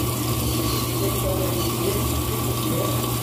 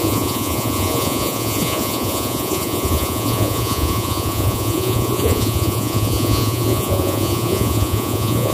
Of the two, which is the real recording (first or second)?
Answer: first